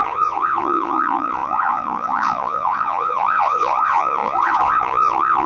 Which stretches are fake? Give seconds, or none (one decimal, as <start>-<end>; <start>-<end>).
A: 0.0-5.5

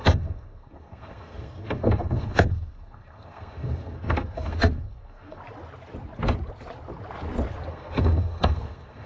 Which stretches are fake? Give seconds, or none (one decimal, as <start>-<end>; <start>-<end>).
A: 0.0-5.4; 7.7-9.1

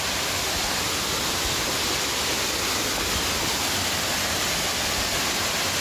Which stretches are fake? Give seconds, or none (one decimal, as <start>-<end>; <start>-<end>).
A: 2.3-2.9

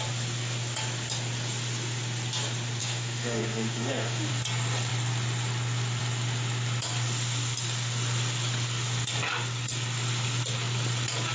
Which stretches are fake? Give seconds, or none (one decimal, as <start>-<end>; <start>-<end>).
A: 2.8-4.3

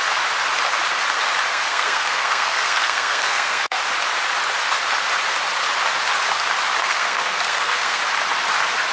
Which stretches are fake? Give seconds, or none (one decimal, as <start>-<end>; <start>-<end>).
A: 1.5-3.8; 6.8-8.0

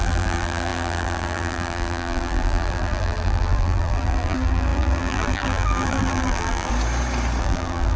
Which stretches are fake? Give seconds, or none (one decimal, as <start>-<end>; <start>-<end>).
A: 0.0-6.7; 7.4-8.0

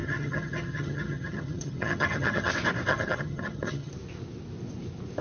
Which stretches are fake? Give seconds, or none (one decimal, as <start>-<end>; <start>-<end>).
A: 0.0-2.5; 2.9-3.9